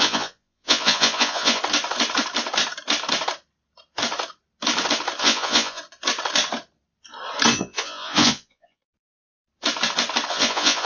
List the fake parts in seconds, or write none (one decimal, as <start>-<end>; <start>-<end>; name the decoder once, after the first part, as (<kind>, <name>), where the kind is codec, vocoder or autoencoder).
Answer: 0.0-1.6 (vocoder, Vocos); 5.2-5.8; 7.5-8.8; 10.3-10.9